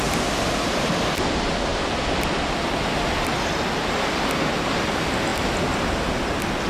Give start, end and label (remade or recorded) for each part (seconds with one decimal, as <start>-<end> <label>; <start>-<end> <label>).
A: 0.0-1.7 recorded; 1.7-3.0 remade; 3.0-6.7 recorded